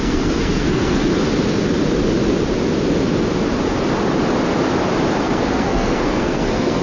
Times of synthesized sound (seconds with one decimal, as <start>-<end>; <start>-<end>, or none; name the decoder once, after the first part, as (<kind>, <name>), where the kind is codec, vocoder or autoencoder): 0.0-1.1 (codec, SNAC); 5.2-6.8